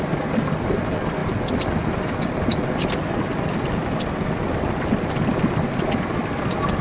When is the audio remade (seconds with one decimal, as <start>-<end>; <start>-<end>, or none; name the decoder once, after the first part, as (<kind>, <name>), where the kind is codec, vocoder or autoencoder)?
none